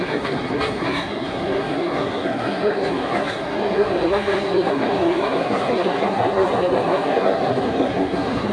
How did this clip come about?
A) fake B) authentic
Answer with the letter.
A